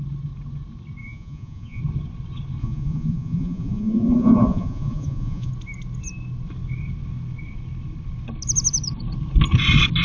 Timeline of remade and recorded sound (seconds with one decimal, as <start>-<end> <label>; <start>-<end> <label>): 0.0-1.0 recorded; 1.0-1.8 remade; 1.8-2.6 recorded; 2.6-5.5 remade; 5.5-10.0 recorded